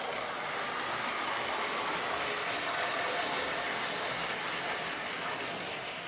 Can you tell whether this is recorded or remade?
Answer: recorded